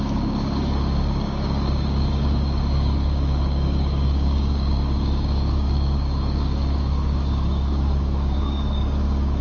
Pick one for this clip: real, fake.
fake